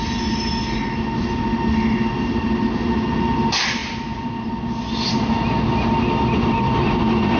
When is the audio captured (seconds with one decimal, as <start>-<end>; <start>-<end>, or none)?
0.0-7.4